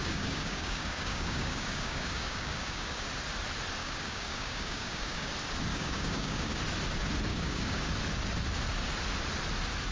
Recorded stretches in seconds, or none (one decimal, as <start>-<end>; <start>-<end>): 3.1-3.8; 5.3-5.7; 6.6-7.3; 7.9-9.9

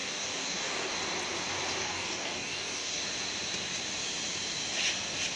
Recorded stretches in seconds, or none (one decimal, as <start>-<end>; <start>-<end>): 0.9-1.8; 3.0-5.4